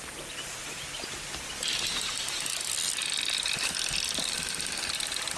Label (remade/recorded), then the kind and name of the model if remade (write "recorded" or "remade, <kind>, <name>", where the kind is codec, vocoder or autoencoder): recorded